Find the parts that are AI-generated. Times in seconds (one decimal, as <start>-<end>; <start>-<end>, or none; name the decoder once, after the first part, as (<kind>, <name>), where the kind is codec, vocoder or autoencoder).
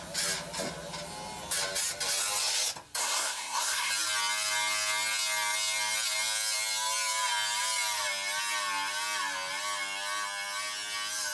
3.0-3.9 (codec, SNAC)